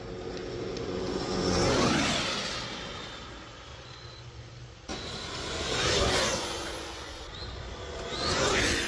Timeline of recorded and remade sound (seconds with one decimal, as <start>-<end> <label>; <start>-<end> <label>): 0.0-0.4 recorded; 0.4-2.0 remade; 2.0-3.7 recorded; 3.7-4.5 remade; 4.5-4.9 recorded; 4.9-8.9 remade